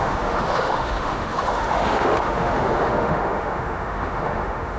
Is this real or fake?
fake